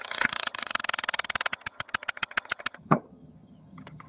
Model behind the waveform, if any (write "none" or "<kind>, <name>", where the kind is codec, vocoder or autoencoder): vocoder, HiFi-GAN